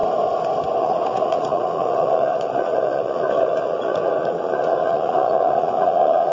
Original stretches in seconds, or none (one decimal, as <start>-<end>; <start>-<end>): 0.0-0.8